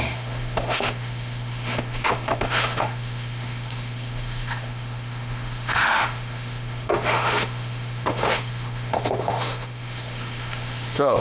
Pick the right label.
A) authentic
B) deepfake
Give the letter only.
B